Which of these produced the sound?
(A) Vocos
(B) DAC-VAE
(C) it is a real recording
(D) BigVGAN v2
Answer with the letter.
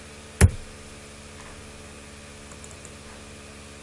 C